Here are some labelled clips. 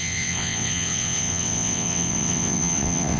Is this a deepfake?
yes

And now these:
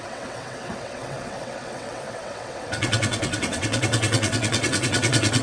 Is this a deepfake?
yes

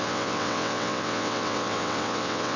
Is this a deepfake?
yes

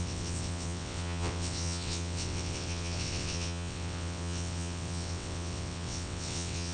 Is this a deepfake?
yes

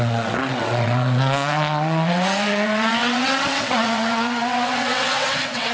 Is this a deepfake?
yes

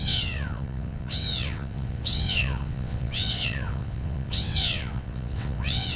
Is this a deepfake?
yes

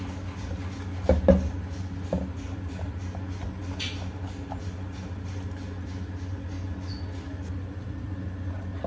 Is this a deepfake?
no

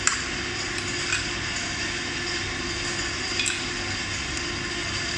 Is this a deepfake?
no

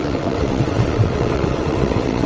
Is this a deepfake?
yes